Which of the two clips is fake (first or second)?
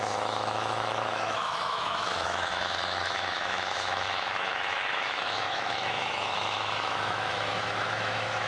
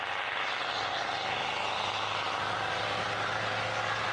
first